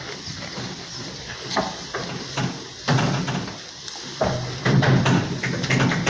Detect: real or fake real